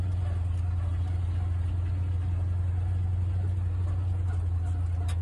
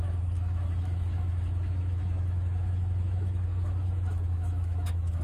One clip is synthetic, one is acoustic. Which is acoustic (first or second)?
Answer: first